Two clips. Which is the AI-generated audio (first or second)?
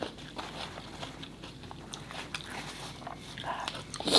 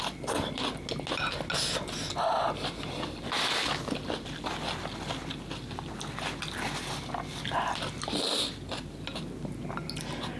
first